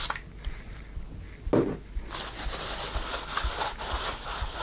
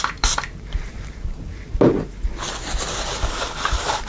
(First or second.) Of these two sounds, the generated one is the second